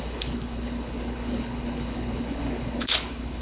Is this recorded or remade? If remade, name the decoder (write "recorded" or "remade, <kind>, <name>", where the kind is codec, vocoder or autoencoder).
remade, codec, HILCodec